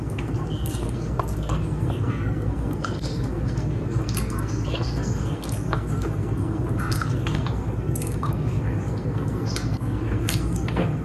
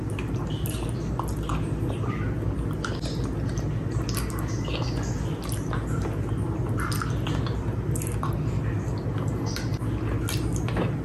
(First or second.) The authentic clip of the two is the second